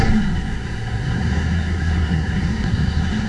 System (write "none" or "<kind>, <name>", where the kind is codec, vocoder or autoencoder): codec, SNAC